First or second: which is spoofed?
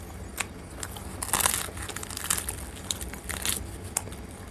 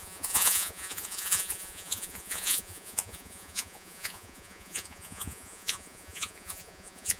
second